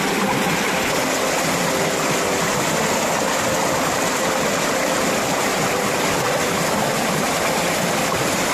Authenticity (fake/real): real